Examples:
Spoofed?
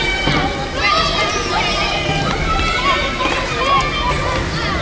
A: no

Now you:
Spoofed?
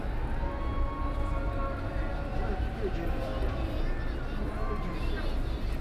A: no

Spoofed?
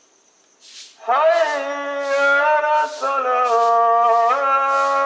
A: no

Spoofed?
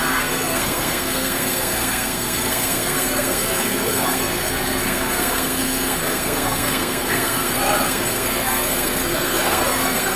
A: yes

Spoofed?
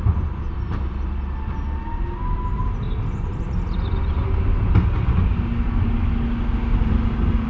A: no